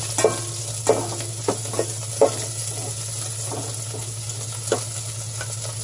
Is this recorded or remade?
recorded